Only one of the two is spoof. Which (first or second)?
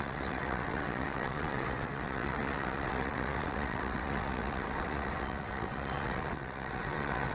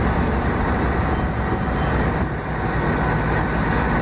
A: first